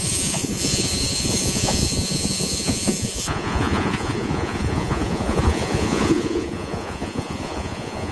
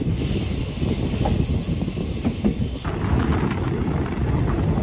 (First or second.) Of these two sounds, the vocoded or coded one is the first